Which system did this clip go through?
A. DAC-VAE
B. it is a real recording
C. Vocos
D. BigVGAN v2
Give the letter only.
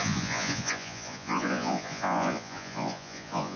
C